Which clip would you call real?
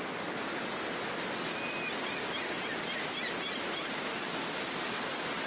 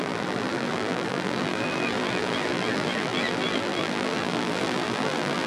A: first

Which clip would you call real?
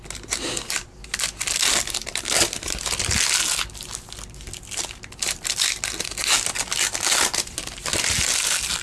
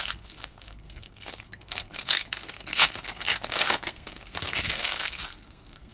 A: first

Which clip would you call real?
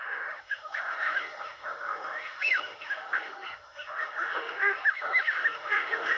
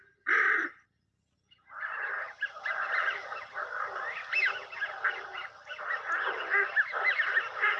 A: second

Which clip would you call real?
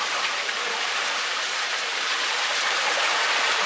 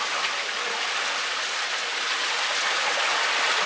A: second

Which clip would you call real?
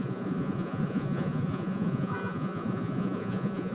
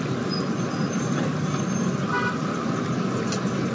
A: second